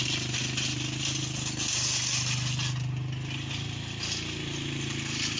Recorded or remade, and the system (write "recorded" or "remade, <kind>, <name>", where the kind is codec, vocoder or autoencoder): recorded